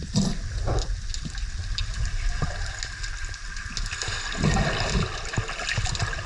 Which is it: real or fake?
real